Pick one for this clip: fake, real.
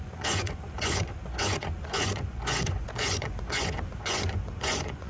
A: fake